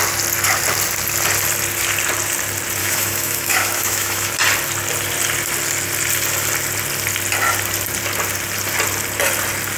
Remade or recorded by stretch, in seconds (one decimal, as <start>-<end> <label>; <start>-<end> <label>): 0.0-2.8 recorded; 2.8-4.3 remade; 4.3-9.8 recorded